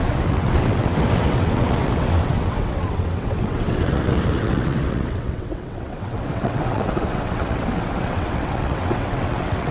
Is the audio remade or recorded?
remade